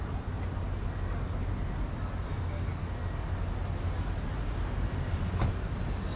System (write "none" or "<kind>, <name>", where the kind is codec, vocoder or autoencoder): none